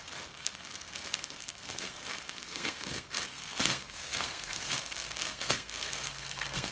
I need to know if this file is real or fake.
fake